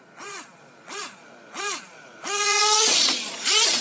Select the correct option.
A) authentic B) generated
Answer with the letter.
B